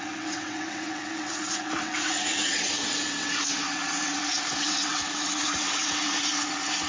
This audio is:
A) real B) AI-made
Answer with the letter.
B